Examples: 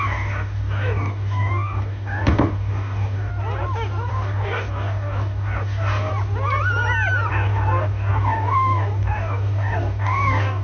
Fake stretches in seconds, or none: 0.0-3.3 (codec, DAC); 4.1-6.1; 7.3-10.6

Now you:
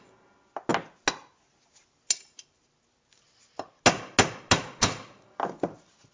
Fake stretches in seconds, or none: none

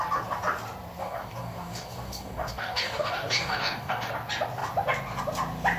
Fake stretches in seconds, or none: 1.0-4.1 (codec, DAC)

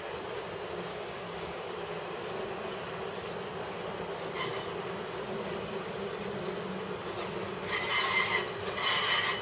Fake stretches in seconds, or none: 0.9-1.7 (codec, DAC)

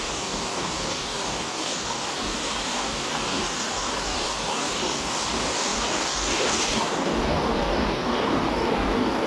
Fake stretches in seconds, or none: 0.0-9.3 (codec, DAC)